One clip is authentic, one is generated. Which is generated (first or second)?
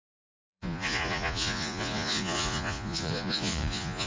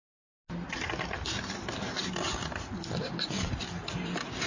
first